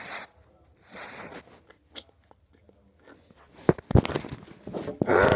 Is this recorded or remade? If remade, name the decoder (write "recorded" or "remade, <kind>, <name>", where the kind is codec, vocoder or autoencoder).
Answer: recorded